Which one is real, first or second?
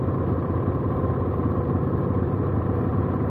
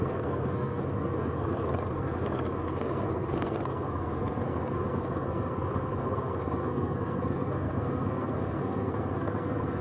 first